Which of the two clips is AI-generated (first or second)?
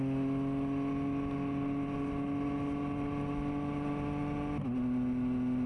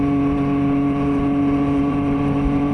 second